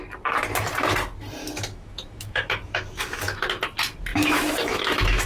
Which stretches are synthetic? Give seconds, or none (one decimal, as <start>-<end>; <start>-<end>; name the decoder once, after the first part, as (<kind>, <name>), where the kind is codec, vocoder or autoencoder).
1.4-3.4 (autoencoder, DAC-VAE); 4.1-5.3